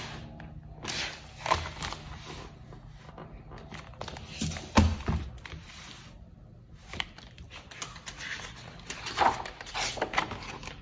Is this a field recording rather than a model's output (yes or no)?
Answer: yes